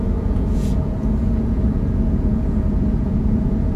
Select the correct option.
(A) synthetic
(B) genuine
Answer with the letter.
A